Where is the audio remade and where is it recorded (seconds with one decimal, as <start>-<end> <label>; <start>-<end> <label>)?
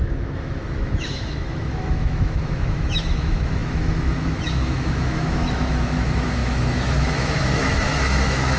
0.0-8.6 remade